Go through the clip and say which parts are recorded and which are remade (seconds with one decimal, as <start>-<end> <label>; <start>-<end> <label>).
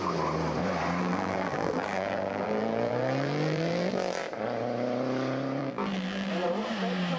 0.0-1.0 recorded; 1.0-4.2 remade; 4.2-5.6 recorded; 5.6-6.3 remade; 6.3-7.2 recorded